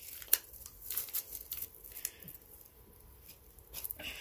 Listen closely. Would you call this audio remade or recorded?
remade